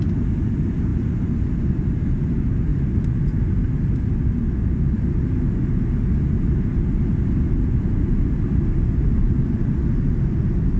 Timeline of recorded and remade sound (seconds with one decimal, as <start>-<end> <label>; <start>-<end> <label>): 0.0-10.8 recorded